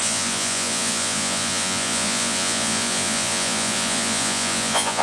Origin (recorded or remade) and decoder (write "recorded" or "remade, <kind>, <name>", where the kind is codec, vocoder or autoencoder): remade, vocoder, Vocos